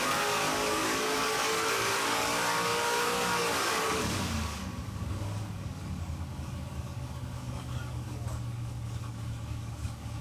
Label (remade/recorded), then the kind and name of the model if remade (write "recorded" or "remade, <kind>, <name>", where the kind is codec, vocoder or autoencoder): remade, codec, DAC